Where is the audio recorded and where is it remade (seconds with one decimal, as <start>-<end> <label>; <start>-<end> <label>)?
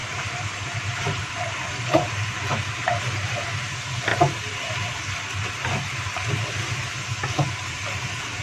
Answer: 0.0-3.4 remade; 3.4-8.4 recorded